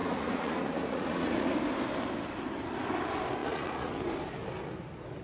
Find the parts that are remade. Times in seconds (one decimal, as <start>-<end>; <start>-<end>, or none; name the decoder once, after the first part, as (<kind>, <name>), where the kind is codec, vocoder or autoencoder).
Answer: 0.0-1.5 (vocoder, Vocos); 3.4-3.9